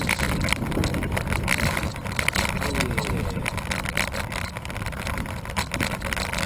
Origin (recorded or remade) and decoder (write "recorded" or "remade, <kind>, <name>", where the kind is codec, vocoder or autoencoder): recorded